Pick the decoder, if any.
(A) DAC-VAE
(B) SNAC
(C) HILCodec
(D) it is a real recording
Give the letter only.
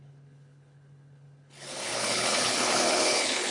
C